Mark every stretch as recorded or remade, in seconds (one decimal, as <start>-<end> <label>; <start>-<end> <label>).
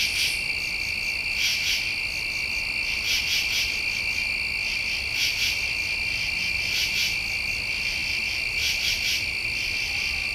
0.0-10.3 recorded